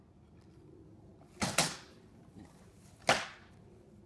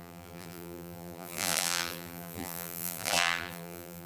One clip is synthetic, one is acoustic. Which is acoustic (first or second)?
first